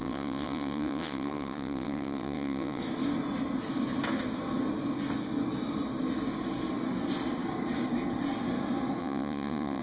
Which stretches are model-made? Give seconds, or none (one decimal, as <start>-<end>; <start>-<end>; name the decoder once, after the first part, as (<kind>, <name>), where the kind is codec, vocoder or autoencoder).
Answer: 0.0-2.8 (vocoder, WaveNeXt); 9.0-9.8